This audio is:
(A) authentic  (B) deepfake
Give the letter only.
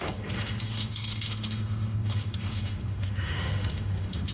B